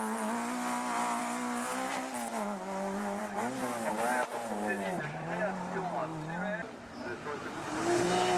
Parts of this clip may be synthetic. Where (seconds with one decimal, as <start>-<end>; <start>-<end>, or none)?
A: none